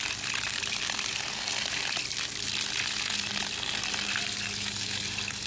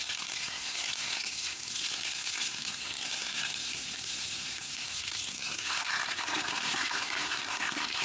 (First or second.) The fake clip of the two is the second